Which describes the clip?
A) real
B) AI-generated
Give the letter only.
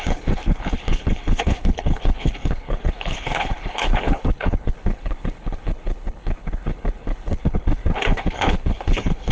B